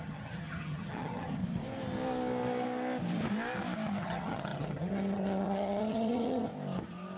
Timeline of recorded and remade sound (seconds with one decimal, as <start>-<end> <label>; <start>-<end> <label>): 0.0-1.4 remade; 1.4-4.0 recorded; 4.0-6.5 remade; 6.5-7.2 recorded